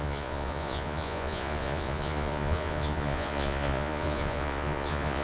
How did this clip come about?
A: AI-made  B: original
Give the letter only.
A